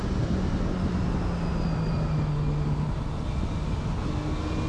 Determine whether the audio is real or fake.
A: real